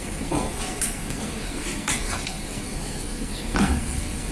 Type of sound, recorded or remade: remade